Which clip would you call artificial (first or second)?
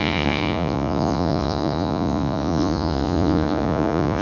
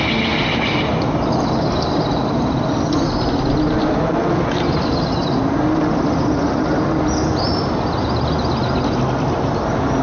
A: first